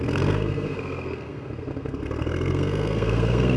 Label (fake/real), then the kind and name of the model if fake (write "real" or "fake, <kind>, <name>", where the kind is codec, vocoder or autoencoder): fake, codec, SNAC